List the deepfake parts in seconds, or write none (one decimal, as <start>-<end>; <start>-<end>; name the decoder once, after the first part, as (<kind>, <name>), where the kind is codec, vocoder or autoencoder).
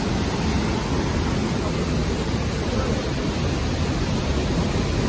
2.0-2.7 (vocoder, BigVGAN v2)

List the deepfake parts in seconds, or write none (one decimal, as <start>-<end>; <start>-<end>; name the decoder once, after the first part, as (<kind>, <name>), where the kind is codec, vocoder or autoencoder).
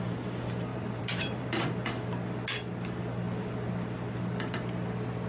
0.7-1.7 (vocoder, BigVGAN v2)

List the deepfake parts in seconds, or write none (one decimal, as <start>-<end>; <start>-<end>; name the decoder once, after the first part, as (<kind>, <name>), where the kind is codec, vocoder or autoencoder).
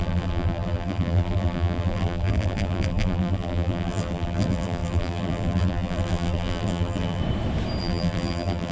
0.0-7.2 (vocoder, BigVGAN v2); 7.8-8.7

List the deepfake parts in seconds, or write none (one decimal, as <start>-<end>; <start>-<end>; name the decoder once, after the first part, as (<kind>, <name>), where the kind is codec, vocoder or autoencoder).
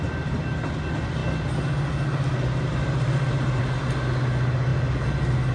2.7-3.6 (vocoder, BigVGAN v2)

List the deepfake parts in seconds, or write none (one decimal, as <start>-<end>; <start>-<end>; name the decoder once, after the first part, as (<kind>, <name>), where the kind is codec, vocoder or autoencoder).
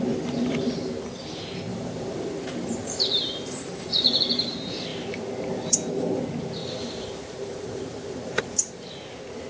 1.7-4.2 (vocoder, BigVGAN v2); 6.6-8.9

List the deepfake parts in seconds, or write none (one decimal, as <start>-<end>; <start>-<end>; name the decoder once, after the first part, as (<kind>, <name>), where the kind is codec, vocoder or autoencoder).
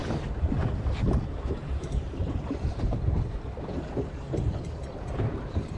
0.0-3.5 (vocoder, BigVGAN v2)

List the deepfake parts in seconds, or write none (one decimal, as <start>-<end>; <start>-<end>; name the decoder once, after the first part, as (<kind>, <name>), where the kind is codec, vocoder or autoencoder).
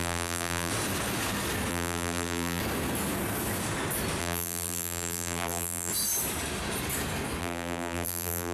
0.0-0.7 (vocoder, BigVGAN v2); 1.7-2.6; 4.2-5.9; 7.4-8.5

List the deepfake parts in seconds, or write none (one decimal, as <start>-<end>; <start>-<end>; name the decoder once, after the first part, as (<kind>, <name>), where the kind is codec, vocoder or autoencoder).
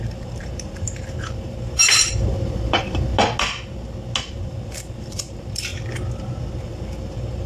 0.0-3.1 (vocoder, BigVGAN v2); 4.2-5.7; 6.6-7.5